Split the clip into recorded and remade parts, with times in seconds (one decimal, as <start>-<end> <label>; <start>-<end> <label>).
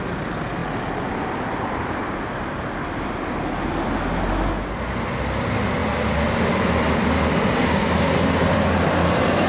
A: 0.0-9.5 recorded